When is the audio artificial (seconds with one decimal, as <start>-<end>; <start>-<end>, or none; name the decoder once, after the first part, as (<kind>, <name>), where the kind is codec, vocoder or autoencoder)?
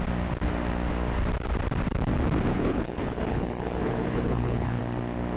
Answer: 2.5-4.8 (codec, HILCodec)